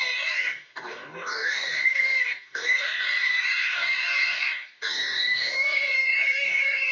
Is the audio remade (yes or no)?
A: yes